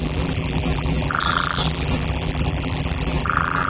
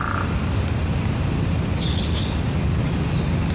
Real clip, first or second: second